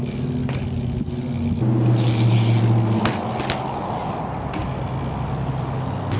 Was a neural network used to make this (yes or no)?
no